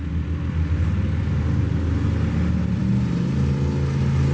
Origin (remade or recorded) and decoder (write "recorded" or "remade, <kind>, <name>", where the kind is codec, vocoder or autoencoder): recorded